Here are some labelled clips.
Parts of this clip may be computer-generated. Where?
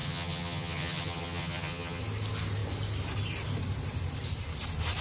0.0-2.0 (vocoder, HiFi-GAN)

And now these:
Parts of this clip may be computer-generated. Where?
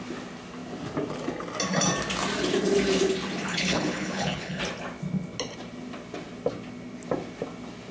3.5-4.6 (codec, HILCodec)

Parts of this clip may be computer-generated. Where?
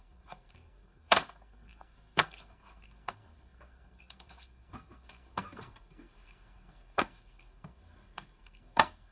0.0-9.1 (codec, SNAC)